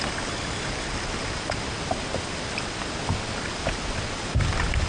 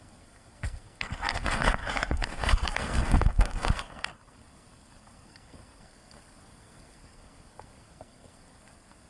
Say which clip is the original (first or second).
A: first